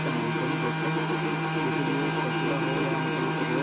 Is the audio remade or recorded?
recorded